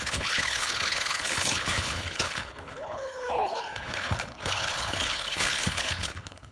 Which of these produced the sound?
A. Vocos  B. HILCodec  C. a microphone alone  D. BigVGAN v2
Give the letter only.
B